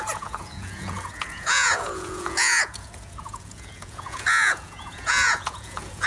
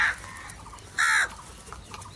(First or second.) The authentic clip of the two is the second